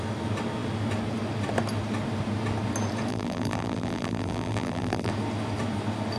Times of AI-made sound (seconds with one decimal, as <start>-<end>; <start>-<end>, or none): 3.1-5.1